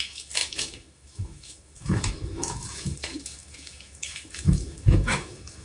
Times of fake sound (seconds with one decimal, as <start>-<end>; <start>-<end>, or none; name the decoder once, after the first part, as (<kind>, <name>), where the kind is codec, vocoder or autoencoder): 0.0-5.6 (autoencoder, DAC-VAE)